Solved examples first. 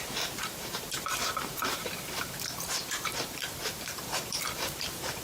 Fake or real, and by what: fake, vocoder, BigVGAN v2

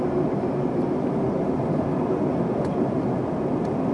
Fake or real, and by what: real